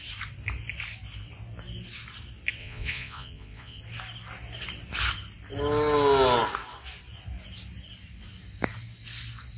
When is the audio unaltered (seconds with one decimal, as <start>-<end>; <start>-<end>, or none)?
0.0-2.6; 3.8-9.6